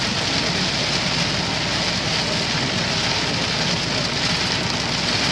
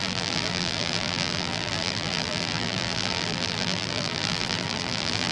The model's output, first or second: second